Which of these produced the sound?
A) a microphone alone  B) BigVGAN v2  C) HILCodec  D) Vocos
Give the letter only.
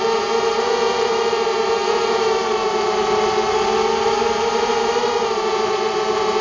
B